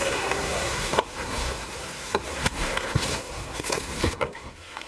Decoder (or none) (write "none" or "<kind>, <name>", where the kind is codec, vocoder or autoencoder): codec, SNAC